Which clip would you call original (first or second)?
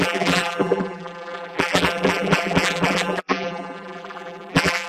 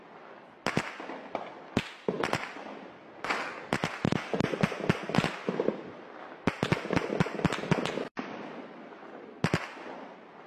second